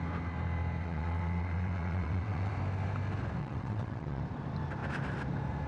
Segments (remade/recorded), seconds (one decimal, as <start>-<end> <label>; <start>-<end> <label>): 0.0-0.8 recorded; 0.8-2.5 remade; 2.5-3.4 recorded; 3.4-4.2 remade; 4.2-5.7 recorded